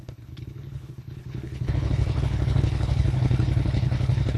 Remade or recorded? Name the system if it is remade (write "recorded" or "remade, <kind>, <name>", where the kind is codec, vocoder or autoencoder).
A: remade, codec, HILCodec